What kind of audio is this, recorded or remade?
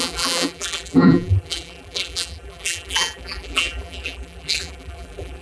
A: remade